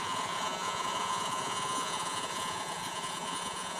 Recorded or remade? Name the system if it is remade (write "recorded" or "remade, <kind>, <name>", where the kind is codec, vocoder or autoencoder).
remade, vocoder, Vocos